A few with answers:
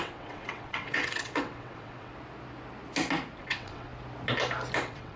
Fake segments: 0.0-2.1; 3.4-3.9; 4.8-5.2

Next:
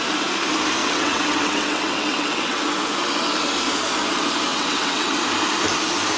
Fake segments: 0.8-2.6; 4.5-5.2

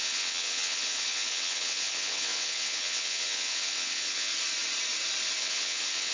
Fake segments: 0.0-4.3; 5.4-6.1

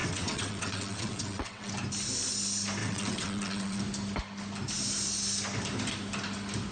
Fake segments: 0.0-1.7; 2.8-3.8

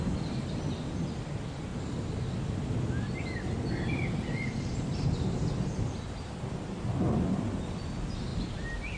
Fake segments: none

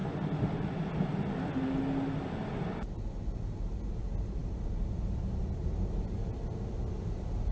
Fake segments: none

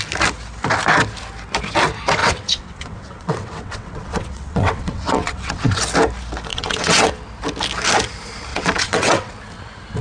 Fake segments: 2.2-5.8; 6.5-7.1; 8.5-9.3